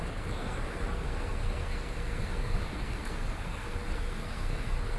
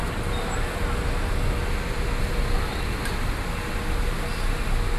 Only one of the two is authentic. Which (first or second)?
second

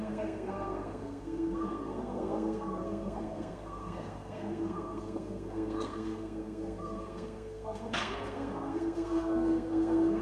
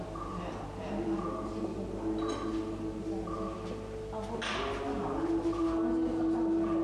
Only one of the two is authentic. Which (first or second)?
second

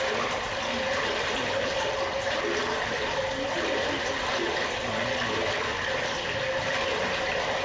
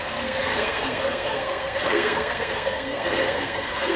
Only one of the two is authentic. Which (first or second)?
first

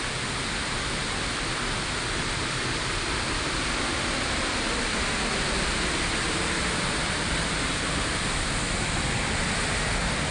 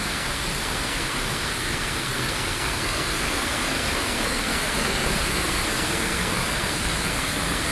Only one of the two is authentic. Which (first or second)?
first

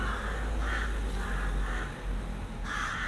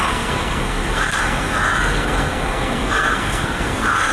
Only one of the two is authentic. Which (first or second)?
first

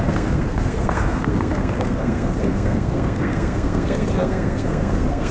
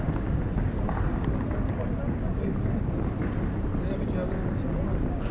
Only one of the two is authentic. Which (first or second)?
second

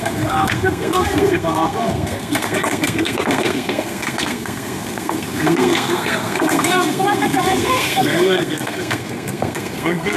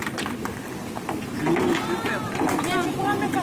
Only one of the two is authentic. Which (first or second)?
second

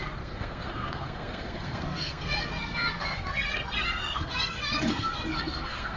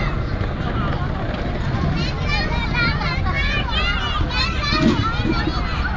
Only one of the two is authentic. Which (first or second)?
second